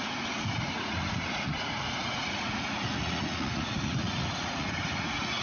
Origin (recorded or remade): remade